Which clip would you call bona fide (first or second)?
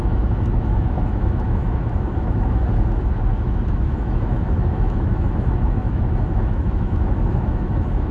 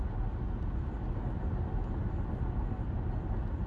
second